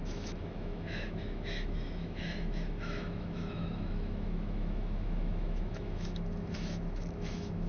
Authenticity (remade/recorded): remade